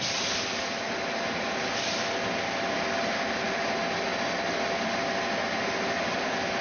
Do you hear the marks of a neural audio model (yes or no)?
no